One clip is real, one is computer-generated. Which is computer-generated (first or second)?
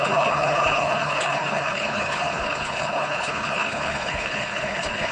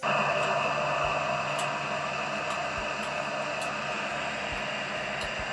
first